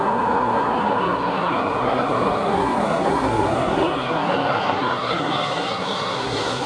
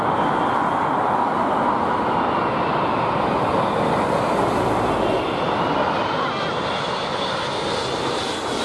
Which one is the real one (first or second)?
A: second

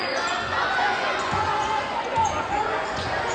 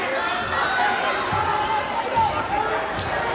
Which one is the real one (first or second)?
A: second